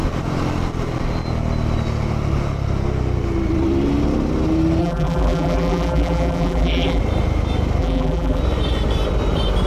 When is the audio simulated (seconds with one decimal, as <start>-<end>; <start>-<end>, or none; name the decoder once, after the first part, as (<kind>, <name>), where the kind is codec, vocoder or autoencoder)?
4.8-7.0 (vocoder, BigVGAN v2); 7.8-8.4